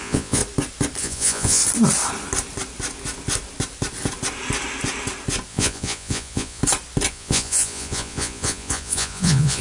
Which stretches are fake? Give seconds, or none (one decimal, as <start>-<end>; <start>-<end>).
0.0-0.4; 1.0-1.6; 5.5-6.6; 7.1-9.6